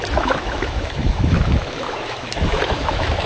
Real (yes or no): no